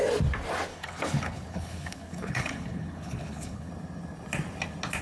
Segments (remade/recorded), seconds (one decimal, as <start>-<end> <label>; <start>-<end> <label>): 0.0-0.7 recorded; 0.7-3.7 remade; 3.7-5.0 recorded